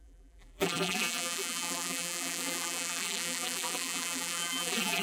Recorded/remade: remade